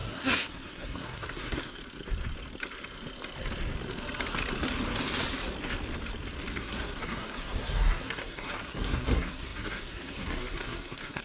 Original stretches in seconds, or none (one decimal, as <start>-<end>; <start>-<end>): 1.8-6.5